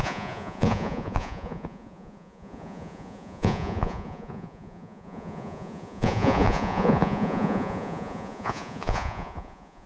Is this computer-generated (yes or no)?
yes